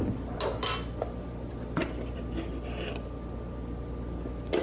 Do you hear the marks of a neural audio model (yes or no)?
no